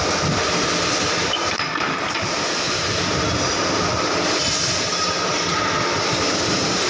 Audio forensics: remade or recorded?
remade